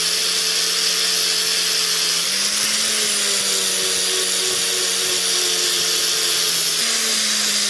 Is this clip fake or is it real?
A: real